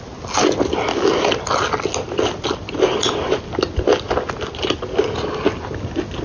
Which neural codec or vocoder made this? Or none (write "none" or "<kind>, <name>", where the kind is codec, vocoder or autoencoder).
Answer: none